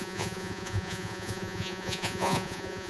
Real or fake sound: fake